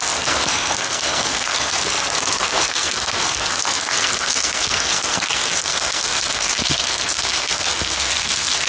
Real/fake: fake